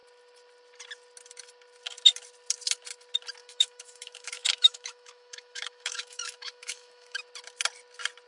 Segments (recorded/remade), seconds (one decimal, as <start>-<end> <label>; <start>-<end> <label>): 0.0-3.4 recorded; 3.4-7.2 remade; 7.2-8.3 recorded